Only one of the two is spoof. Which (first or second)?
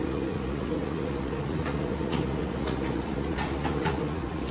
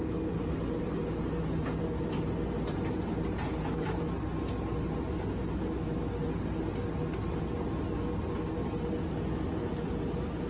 first